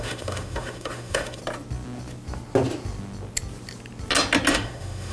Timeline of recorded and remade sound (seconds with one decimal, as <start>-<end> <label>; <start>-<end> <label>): 0.0-1.4 remade; 1.4-4.5 recorded; 4.5-5.1 remade